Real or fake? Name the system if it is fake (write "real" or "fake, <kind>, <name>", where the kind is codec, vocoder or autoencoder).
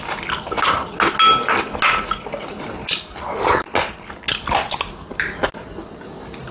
real